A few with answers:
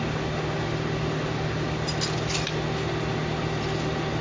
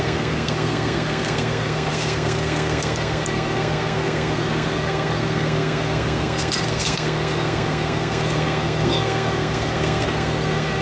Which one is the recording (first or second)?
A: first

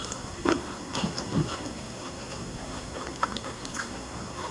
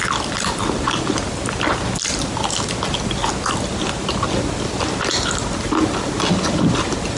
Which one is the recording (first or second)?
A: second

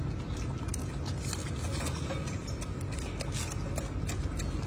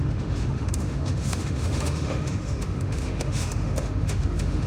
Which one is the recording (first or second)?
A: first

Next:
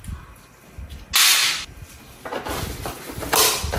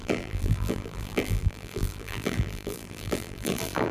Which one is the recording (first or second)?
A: first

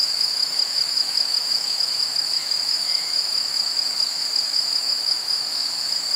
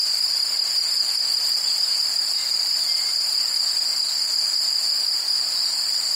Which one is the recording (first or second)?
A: second